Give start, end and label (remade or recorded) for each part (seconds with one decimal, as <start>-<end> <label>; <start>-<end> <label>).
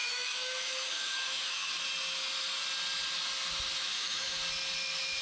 0.0-1.7 remade; 1.7-3.8 recorded; 3.8-4.4 remade; 4.4-5.2 recorded